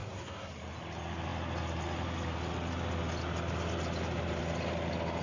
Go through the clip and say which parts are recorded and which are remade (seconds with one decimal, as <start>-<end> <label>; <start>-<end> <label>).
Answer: 0.0-0.5 remade; 0.5-5.2 recorded